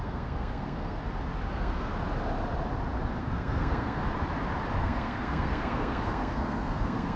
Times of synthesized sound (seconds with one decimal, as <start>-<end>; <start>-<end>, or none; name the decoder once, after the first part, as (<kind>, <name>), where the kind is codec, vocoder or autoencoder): 0.0-1.0 (codec, SNAC); 1.5-1.9; 3.2-4.0; 4.8-7.2